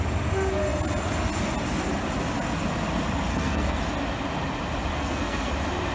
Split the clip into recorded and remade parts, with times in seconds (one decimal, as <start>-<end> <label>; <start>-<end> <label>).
0.0-3.3 recorded; 3.3-3.8 remade; 3.8-4.9 recorded; 4.9-5.5 remade; 5.5-5.9 recorded